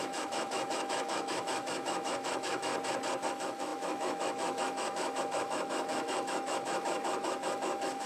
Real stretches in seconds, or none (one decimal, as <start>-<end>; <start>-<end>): 2.7-3.3